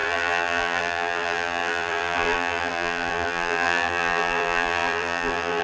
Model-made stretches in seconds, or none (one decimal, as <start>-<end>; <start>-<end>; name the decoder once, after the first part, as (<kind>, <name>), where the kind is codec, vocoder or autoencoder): 0.0-5.6 (vocoder, BigVGAN v2)